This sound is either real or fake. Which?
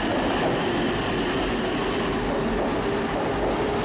real